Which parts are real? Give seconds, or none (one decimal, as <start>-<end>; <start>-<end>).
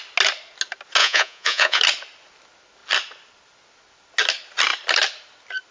0.0-1.0; 1.8-5.7